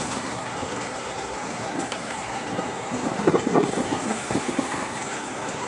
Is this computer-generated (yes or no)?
yes